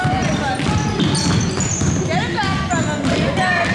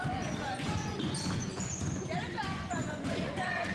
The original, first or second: first